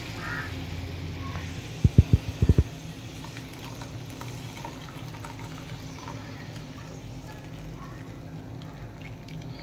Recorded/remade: recorded